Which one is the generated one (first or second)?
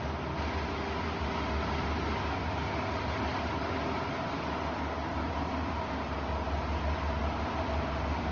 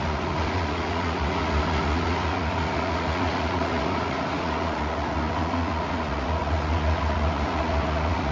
second